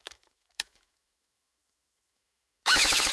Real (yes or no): no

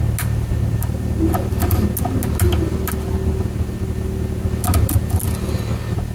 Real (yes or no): yes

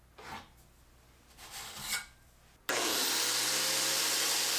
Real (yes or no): yes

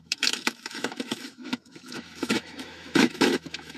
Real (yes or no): no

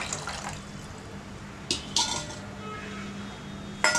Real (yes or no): yes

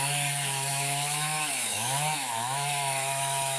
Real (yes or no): no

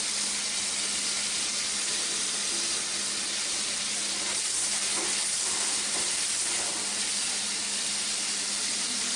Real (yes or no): yes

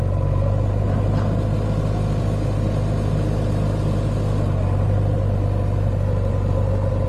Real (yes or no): yes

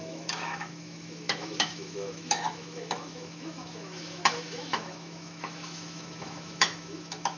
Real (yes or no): no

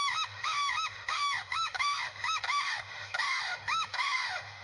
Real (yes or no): no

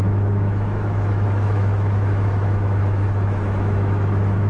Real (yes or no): no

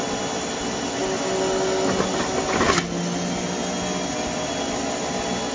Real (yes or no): yes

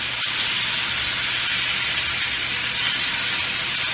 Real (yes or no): yes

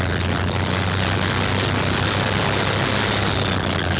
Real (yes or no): yes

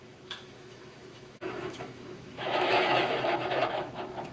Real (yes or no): no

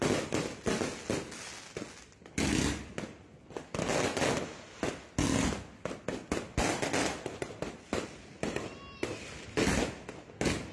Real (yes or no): yes